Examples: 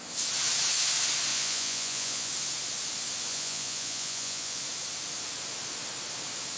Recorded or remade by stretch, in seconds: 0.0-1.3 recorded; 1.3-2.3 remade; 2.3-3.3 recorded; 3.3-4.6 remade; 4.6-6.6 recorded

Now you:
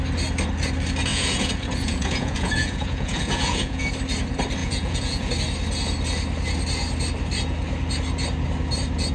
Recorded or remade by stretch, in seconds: 0.0-1.1 recorded; 1.1-3.9 remade; 3.9-4.6 recorded; 4.6-5.3 remade; 5.3-9.1 recorded

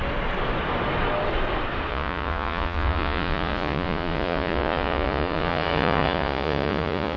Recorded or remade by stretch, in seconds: 0.0-1.9 recorded; 1.9-7.2 remade

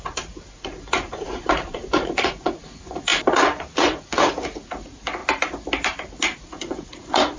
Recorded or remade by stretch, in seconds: 0.0-5.2 remade; 5.2-6.4 recorded; 6.4-7.4 remade

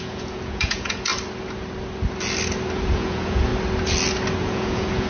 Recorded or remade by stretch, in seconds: 0.0-1.1 remade; 1.1-2.9 recorded; 2.9-3.5 remade; 3.5-4.4 recorded; 4.4-5.1 remade